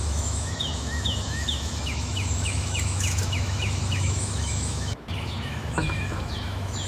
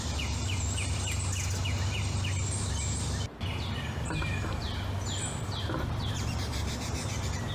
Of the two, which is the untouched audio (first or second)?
second